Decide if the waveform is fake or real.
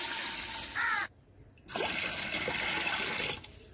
real